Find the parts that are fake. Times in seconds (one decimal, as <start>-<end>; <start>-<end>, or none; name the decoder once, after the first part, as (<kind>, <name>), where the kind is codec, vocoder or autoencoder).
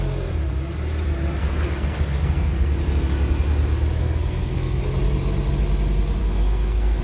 1.4-2.7 (codec, SNAC); 4.0-4.8; 6.2-7.0